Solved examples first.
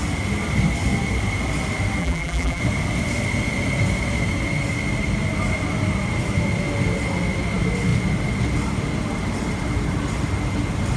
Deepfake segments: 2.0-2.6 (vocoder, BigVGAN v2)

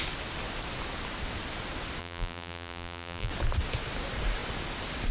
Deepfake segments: 2.0-3.3 (vocoder, BigVGAN v2)